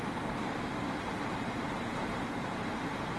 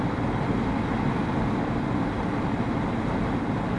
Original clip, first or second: second